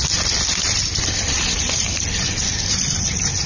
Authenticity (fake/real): real